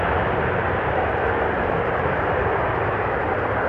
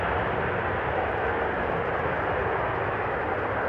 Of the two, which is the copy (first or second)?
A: first